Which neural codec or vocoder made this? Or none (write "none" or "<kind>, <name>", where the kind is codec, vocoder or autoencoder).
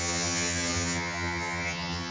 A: vocoder, HiFi-GAN